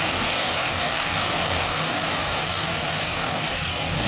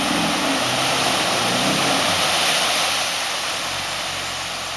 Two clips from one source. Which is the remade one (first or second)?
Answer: first